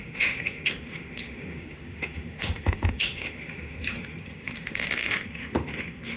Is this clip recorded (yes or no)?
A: no